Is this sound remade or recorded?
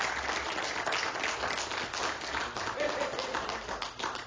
recorded